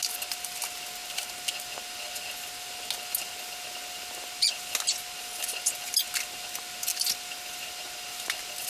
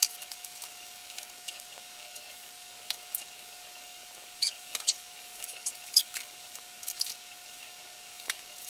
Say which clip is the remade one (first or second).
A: second